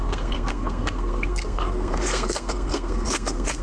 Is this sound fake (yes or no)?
yes